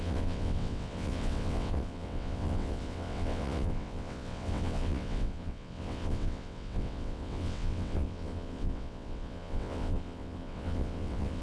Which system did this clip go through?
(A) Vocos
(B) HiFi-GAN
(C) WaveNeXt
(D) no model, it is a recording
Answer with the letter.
C